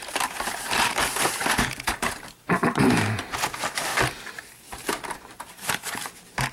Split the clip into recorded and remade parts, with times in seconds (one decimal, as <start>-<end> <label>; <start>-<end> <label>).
0.0-3.9 remade; 3.9-4.4 recorded; 4.4-6.5 remade